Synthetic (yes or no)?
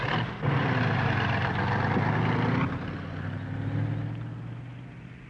no